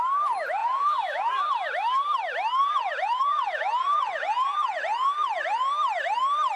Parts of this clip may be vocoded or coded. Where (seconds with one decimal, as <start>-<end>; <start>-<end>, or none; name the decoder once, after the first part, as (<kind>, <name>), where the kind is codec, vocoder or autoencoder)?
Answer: 0.6-1.4 (vocoder, Vocos); 2.6-5.7